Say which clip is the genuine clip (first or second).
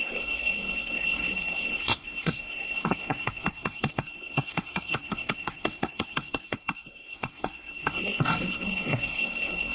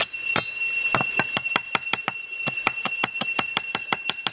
second